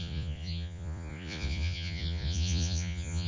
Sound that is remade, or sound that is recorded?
remade